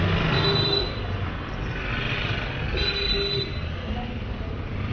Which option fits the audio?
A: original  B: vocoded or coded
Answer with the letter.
A